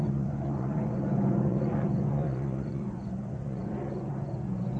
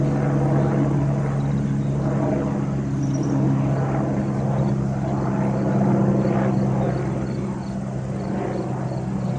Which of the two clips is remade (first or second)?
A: first